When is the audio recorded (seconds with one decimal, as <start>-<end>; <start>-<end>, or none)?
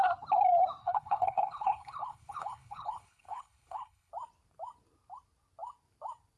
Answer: 0.0-0.8; 4.1-6.4